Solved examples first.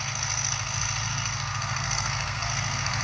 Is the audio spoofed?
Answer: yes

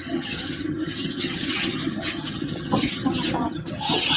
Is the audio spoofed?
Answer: yes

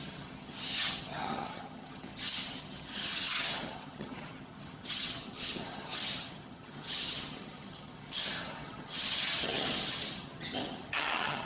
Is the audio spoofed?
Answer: yes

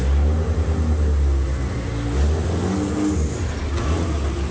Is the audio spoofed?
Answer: no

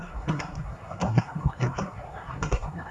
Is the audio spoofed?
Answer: yes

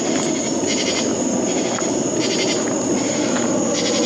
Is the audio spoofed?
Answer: no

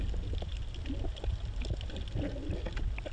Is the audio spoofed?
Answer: no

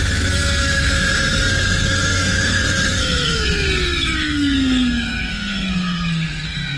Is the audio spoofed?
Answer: yes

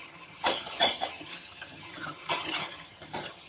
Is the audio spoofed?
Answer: yes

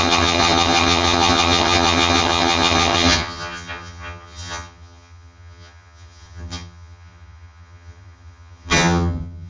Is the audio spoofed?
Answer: yes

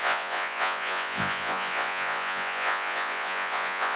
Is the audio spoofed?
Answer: yes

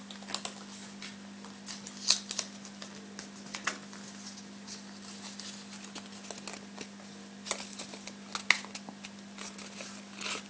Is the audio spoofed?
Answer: no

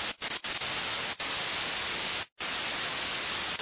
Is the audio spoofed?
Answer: no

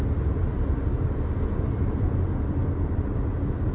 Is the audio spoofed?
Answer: no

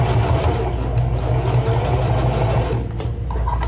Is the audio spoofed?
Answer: no